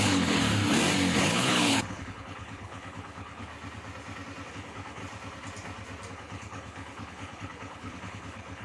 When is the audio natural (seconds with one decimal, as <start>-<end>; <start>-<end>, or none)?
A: 0.4-1.2; 3.5-4.5; 5.0-6.1